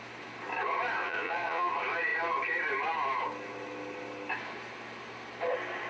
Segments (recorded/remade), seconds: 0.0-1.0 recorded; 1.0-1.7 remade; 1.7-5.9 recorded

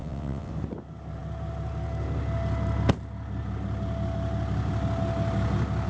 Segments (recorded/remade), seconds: 0.0-0.5 remade; 0.5-5.9 recorded

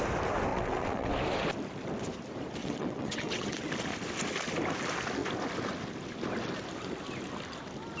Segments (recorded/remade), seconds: 0.0-0.5 recorded; 0.5-1.1 remade; 1.1-2.6 recorded; 2.6-3.7 remade; 3.7-8.0 recorded

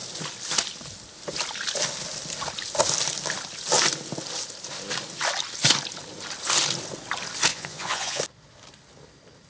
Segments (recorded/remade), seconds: 0.0-7.5 recorded; 7.5-8.2 remade; 8.2-9.5 recorded

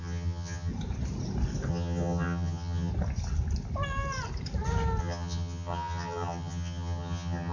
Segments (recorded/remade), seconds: 0.0-0.7 remade; 0.7-1.7 recorded; 1.7-2.9 remade; 2.9-5.0 recorded; 5.0-7.5 remade

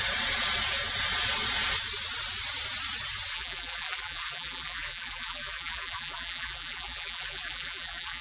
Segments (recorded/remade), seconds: 0.0-3.3 recorded; 3.3-8.2 remade

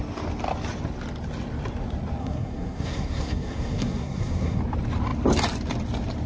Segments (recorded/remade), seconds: 0.0-2.2 recorded; 2.2-4.6 remade; 4.6-6.3 recorded